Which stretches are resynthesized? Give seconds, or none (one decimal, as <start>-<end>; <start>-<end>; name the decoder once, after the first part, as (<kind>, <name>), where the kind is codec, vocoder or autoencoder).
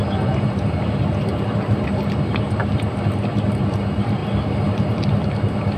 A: 0.0-4.2 (vocoder, BigVGAN v2); 4.9-5.8